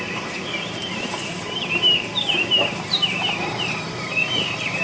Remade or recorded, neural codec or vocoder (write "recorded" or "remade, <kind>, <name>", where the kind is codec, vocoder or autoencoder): remade, vocoder, BigVGAN v2